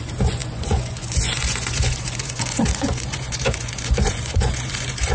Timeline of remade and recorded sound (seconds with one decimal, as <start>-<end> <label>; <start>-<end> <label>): 0.0-5.1 remade